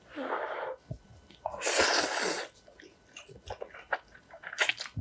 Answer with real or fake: real